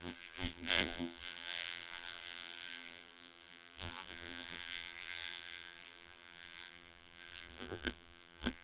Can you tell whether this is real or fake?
fake